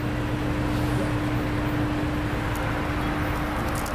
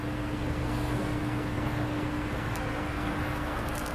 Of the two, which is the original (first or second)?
first